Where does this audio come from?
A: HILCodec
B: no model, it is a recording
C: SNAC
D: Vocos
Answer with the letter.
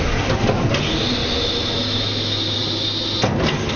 B